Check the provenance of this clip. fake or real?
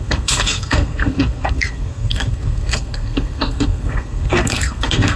fake